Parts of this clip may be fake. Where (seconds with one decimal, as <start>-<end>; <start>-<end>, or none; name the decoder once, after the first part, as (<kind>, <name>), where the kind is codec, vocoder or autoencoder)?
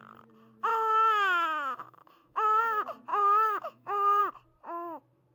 0.7-2.6 (autoencoder, DAC-VAE); 3.1-4.2